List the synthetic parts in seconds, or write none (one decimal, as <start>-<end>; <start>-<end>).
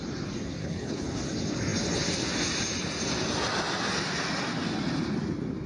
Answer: 0.6-1.2